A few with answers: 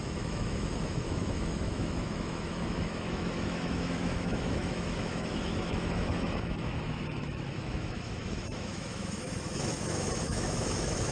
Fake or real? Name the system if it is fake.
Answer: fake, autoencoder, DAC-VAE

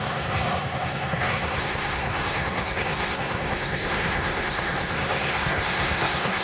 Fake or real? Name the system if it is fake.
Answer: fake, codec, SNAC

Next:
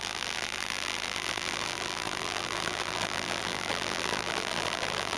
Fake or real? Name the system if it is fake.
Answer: fake, vocoder, BigVGAN v2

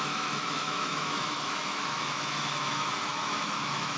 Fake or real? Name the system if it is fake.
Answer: fake, autoencoder, DAC-VAE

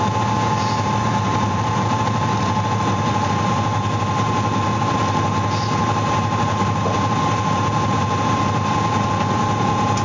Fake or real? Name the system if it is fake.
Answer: real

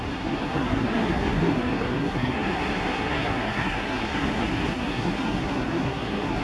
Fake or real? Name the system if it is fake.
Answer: fake, codec, SNAC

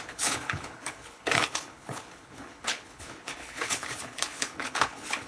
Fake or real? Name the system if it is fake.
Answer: fake, codec, HILCodec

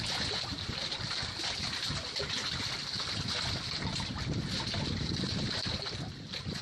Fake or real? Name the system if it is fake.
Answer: real